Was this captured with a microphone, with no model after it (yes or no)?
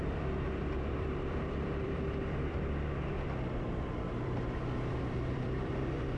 no